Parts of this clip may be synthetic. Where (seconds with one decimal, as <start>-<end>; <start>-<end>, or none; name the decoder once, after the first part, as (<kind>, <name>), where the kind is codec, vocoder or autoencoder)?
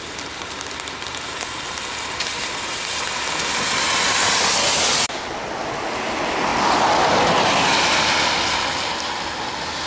none